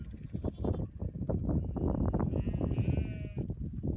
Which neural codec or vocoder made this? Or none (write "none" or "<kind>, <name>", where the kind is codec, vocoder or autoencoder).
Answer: none